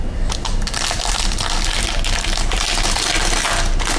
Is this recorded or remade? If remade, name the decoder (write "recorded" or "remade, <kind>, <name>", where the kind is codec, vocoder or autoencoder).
recorded